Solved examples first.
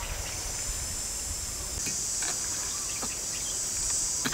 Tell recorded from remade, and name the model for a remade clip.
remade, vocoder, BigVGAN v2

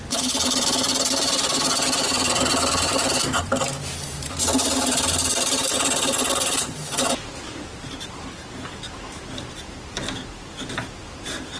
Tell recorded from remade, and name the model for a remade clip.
remade, vocoder, BigVGAN v2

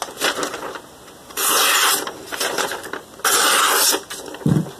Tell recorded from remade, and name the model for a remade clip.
recorded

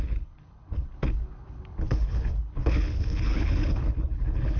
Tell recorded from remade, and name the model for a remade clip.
remade, codec, HILCodec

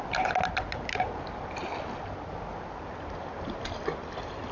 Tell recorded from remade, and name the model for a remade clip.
recorded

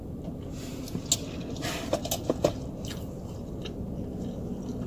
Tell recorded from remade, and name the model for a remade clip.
recorded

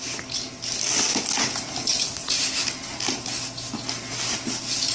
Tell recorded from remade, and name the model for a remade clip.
recorded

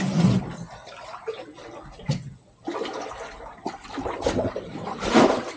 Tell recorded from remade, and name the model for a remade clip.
recorded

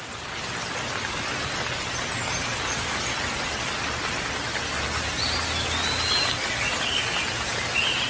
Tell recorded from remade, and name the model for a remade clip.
recorded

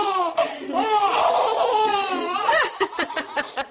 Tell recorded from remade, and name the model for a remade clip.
remade, vocoder, Vocos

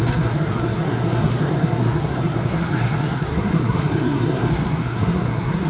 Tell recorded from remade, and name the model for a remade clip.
remade, codec, SNAC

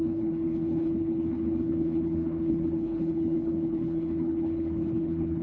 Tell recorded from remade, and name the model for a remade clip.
remade, codec, HILCodec